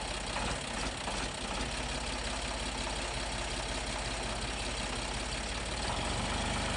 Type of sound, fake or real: real